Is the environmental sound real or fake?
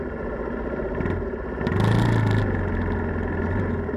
real